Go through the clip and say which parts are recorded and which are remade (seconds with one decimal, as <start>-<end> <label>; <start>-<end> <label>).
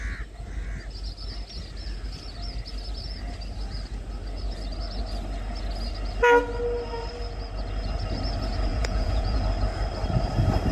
0.0-8.7 recorded; 8.7-9.4 remade; 9.4-10.7 recorded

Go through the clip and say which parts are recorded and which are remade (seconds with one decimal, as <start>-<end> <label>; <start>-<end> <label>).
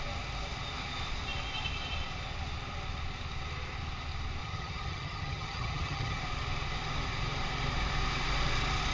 0.0-4.4 recorded; 4.4-6.2 remade; 6.2-8.9 recorded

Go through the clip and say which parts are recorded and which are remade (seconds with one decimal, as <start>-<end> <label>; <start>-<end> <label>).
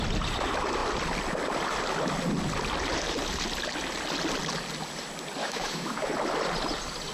0.0-5.4 recorded; 5.4-6.1 remade; 6.1-7.1 recorded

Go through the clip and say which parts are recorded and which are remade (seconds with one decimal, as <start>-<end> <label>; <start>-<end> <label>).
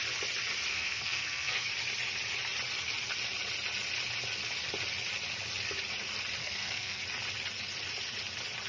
0.0-0.7 recorded; 0.7-1.7 remade; 1.7-6.4 recorded; 6.4-7.0 remade; 7.0-8.7 recorded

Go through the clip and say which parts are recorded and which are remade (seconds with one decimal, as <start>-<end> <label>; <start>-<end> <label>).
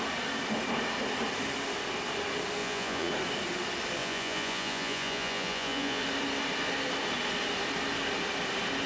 0.0-2.6 recorded; 2.6-3.1 remade; 3.1-4.0 recorded; 4.0-6.0 remade; 6.0-8.9 recorded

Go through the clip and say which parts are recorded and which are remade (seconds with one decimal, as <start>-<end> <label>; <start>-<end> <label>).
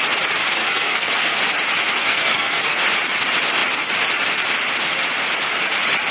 0.0-0.6 recorded; 0.6-1.4 remade; 1.4-2.0 recorded; 2.0-2.8 remade; 2.8-6.1 recorded